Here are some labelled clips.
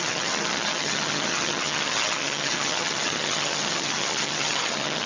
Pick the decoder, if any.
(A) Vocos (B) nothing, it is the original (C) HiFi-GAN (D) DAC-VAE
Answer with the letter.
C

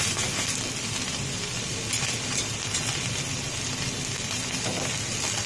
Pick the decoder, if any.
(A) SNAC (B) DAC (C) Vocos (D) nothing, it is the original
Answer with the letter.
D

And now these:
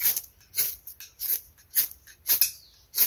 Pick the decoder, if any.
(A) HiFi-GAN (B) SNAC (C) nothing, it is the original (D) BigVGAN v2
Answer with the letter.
C